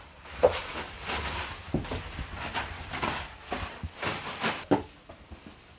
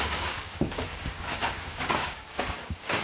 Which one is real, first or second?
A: first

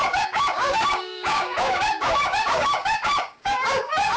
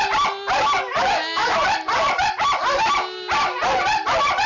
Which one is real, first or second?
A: second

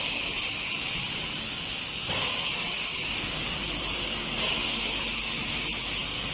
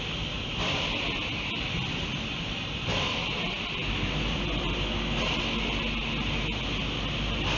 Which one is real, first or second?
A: second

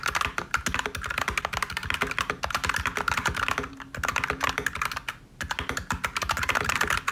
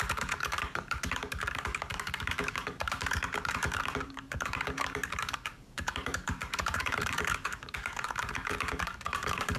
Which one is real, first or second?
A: first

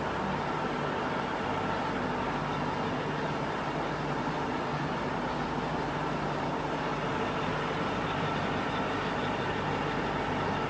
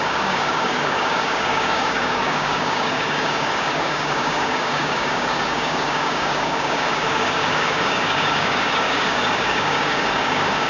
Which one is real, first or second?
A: first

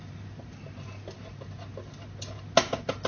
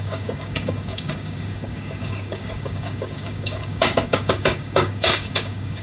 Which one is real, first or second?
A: first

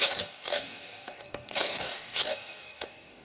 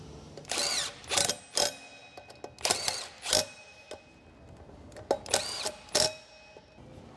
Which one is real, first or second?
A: second